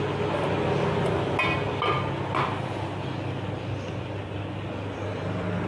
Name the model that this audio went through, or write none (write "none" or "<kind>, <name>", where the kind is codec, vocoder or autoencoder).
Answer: none